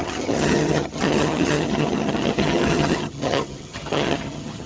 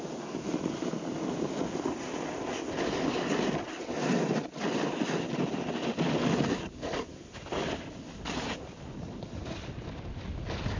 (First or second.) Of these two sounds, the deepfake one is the first